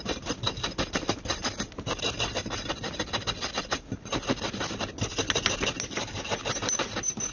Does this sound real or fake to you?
real